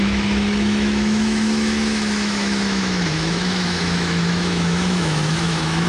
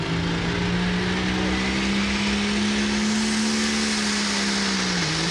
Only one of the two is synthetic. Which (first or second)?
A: first